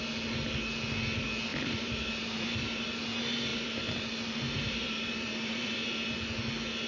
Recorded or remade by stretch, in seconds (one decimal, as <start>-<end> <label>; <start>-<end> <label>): 0.0-1.5 recorded; 1.5-3.0 remade; 3.0-3.5 recorded; 3.5-6.1 remade; 6.1-6.9 recorded

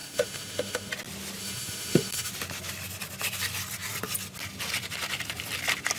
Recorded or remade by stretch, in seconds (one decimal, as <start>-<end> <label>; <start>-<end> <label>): 0.0-0.9 remade; 0.9-1.4 recorded; 1.4-2.3 remade; 2.3-6.0 recorded

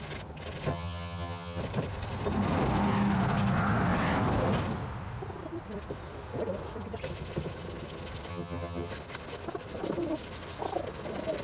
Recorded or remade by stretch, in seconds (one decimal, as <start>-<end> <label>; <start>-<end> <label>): 0.0-0.7 recorded; 0.7-1.6 remade; 1.6-8.3 recorded; 8.3-8.9 remade; 8.9-11.4 recorded

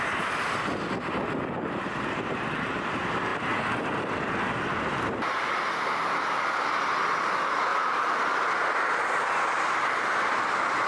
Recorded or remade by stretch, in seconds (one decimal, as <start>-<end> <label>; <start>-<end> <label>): 0.0-7.7 recorded; 7.7-9.9 remade; 9.9-10.9 recorded

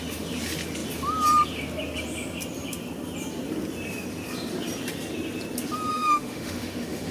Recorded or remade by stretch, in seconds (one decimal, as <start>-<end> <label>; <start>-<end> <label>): 0.0-5.9 recorded; 5.9-7.1 remade

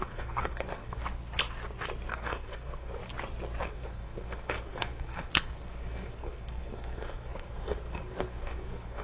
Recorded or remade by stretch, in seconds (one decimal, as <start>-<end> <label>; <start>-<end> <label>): 0.0-1.0 remade; 1.0-2.1 recorded; 2.1-3.0 remade; 3.0-3.6 recorded; 3.6-9.0 remade